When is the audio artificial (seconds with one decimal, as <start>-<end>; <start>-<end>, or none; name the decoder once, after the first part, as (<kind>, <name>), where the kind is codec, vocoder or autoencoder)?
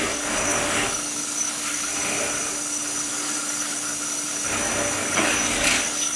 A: 0.0-1.9 (codec, DAC); 3.1-3.9; 4.9-6.2